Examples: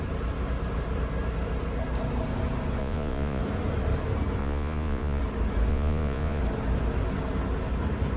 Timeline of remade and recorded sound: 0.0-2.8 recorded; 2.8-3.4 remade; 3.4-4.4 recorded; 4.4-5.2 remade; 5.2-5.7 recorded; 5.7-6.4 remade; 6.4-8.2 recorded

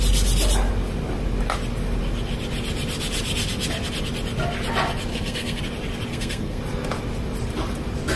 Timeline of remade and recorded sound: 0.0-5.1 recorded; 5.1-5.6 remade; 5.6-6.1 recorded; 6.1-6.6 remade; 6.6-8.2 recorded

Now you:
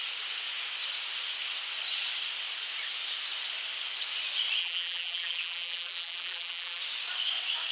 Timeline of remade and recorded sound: 0.0-4.6 recorded; 4.6-6.8 remade; 6.8-7.7 recorded

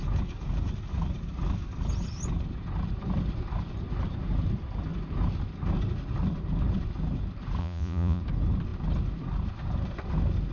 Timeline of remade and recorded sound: 0.0-7.6 recorded; 7.6-8.2 remade; 8.2-10.5 recorded

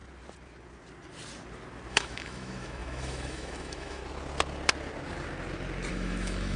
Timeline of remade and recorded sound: 0.0-1.9 recorded; 1.9-4.0 remade; 4.0-5.9 recorded; 5.9-6.6 remade